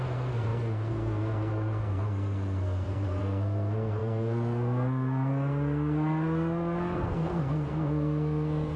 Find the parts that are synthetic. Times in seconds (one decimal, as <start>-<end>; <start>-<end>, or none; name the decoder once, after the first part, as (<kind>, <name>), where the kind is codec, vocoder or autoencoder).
0.0-8.8 (codec, SNAC)

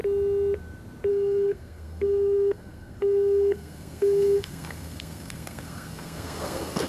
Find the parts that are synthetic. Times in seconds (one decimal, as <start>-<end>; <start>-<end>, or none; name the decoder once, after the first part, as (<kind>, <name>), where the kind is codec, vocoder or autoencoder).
1.1-6.9 (codec, SNAC)

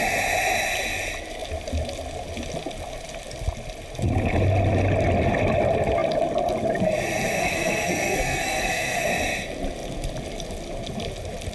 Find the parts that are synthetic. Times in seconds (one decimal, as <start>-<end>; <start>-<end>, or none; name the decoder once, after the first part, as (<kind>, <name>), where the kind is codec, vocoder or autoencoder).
7.4-9.1 (codec, SNAC)

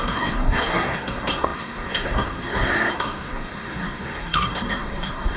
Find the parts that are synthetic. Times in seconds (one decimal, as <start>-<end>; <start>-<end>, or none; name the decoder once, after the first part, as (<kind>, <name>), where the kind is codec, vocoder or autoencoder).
0.0-5.4 (codec, SNAC)

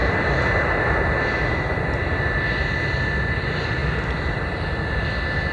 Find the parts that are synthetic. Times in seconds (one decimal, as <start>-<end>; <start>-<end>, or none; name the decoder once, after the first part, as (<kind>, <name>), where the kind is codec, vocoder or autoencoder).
none